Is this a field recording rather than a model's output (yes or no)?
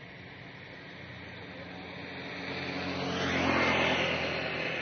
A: yes